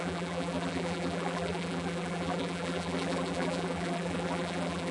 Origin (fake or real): fake